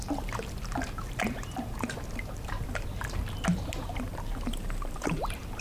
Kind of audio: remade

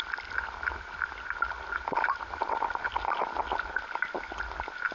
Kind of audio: recorded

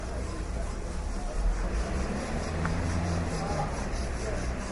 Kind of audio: remade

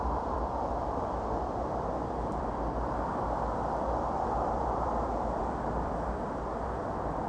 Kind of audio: remade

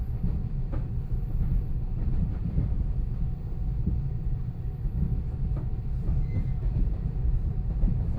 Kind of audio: remade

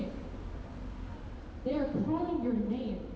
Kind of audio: remade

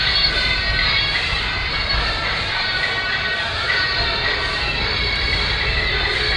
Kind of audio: remade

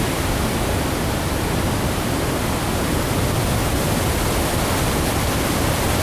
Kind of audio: recorded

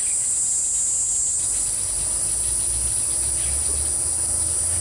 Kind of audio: recorded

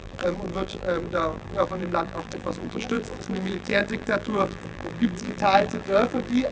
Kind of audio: remade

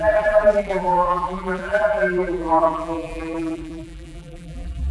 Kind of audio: remade